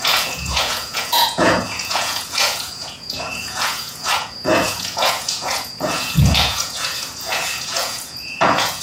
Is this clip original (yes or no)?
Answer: no